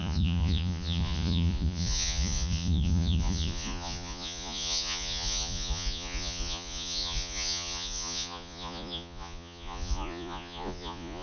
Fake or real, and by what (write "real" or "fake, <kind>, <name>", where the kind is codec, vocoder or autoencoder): fake, vocoder, Vocos